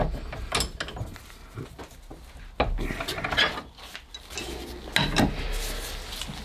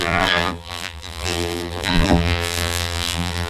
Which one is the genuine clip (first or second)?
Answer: first